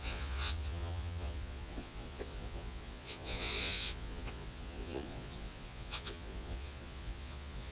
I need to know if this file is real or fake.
fake